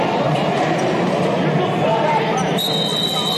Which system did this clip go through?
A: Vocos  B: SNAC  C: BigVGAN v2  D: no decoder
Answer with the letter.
D